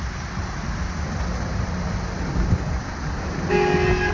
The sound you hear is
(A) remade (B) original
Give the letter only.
B